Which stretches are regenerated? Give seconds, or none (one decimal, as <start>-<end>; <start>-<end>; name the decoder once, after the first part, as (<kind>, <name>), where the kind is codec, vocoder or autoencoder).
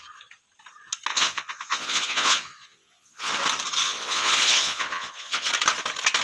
1.1-3.3 (vocoder, Vocos); 3.8-5.5